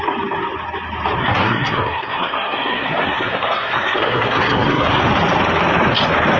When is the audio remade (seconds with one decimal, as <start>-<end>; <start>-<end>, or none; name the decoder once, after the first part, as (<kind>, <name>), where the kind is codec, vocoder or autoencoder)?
1.2-5.0 (codec, SNAC)

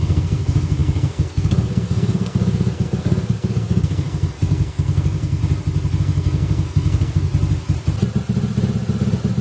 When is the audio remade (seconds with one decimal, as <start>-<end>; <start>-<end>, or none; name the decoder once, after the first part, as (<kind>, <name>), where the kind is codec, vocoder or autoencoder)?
0.0-5.4 (codec, SNAC); 6.0-7.3

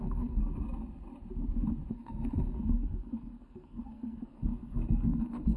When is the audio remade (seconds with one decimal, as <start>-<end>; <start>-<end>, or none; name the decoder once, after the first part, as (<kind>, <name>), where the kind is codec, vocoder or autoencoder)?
0.0-0.4 (codec, SNAC); 1.9-5.6

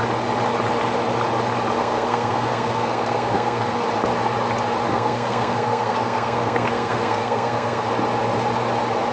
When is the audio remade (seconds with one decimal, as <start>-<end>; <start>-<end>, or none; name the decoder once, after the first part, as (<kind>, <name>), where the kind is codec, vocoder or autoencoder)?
1.8-3.8 (codec, SNAC); 4.9-7.9

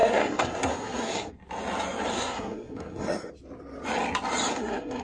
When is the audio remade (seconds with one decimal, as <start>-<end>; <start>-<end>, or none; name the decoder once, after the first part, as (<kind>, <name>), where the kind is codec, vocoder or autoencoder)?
0.0-1.3 (codec, SNAC); 2.1-3.3; 4.5-5.0

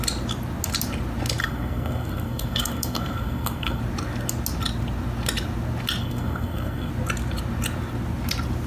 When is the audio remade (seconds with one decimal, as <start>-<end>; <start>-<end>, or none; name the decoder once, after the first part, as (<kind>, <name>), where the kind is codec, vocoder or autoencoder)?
1.4-3.8 (codec, SNAC); 6.0-6.9

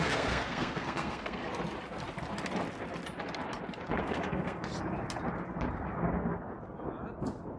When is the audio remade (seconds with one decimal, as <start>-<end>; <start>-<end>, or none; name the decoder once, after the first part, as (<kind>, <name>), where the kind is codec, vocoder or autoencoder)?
0.0-1.4 (codec, SNAC); 4.0-4.7